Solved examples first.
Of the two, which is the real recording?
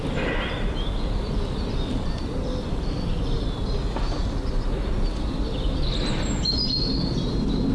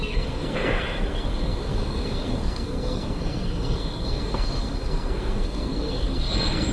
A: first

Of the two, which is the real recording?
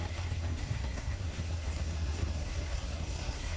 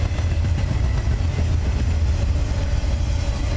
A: second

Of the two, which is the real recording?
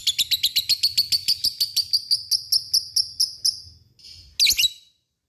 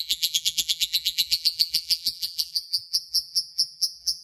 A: first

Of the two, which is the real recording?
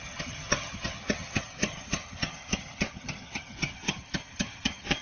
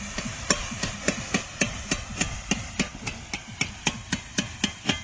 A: second